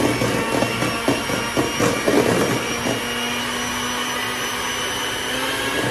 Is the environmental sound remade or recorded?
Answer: recorded